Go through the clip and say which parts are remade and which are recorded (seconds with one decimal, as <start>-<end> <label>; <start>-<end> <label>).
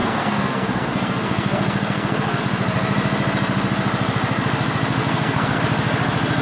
0.0-2.4 remade; 2.4-5.0 recorded; 5.0-5.6 remade; 5.6-6.4 recorded